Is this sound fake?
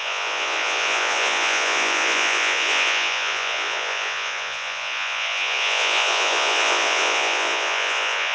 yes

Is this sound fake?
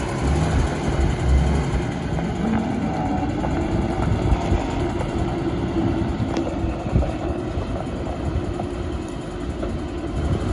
no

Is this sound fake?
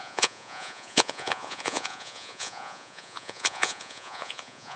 yes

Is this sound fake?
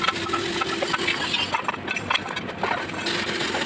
no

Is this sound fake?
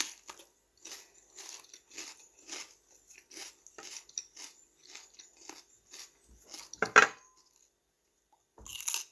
no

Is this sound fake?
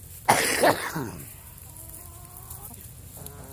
no